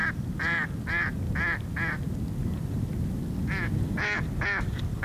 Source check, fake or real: real